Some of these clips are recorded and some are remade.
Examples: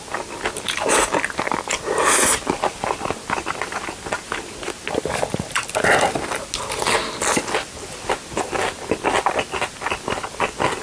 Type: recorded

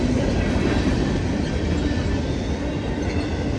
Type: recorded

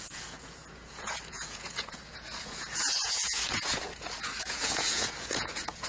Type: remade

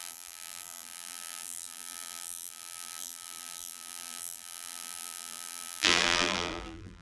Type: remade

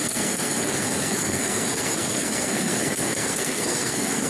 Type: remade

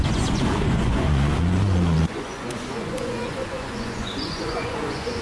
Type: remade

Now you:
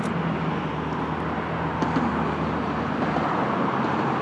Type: recorded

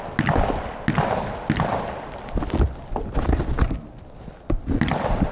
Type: recorded